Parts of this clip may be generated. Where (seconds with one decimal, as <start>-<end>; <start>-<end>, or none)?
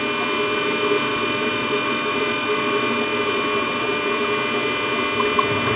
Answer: 1.1-4.2